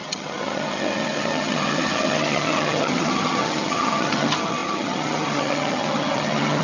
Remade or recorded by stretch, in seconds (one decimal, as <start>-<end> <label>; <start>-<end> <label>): 0.0-6.6 remade